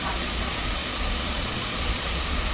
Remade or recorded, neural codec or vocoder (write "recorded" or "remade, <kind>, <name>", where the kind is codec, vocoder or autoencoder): remade, vocoder, Vocos